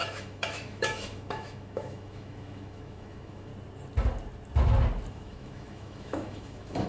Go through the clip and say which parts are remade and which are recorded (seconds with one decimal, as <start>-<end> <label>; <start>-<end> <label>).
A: 0.0-3.5 remade; 3.5-5.1 recorded; 5.1-6.9 remade

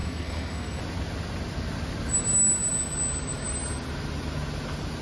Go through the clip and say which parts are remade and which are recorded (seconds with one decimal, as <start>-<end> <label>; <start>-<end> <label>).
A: 0.0-0.8 remade; 0.8-5.0 recorded